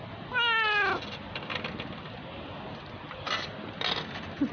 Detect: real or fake real